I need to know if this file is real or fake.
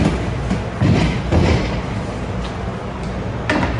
real